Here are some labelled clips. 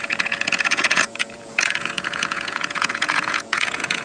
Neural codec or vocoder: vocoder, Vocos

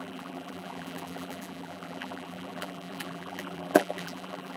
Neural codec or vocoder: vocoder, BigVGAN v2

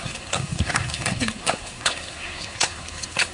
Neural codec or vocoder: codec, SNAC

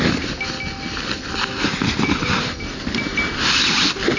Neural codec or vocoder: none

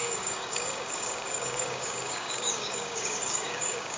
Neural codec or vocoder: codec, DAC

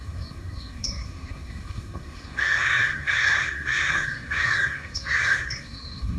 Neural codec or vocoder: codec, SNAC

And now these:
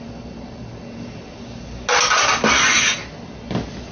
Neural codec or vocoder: none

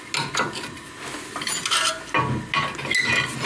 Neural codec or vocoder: none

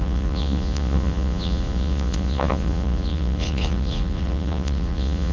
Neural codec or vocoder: vocoder, Vocos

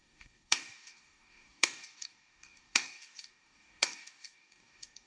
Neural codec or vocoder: codec, DAC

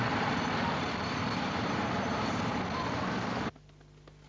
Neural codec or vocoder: none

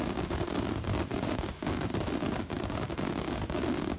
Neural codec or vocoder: codec, DAC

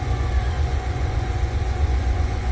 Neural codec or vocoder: vocoder, Vocos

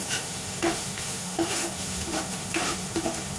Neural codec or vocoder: autoencoder, DAC-VAE